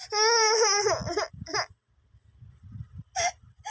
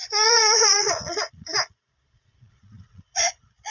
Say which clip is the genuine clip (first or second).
first